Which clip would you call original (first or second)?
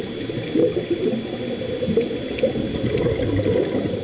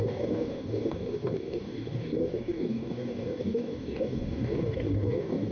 first